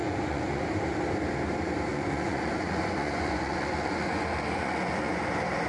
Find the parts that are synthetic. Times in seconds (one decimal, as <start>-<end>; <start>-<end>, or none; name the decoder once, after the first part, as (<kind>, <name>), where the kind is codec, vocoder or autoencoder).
0.0-0.6 (vocoder, Vocos); 1.9-5.2